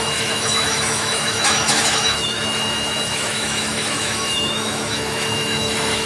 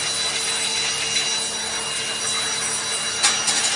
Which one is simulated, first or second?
first